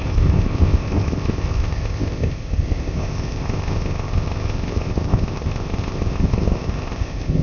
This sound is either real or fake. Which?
fake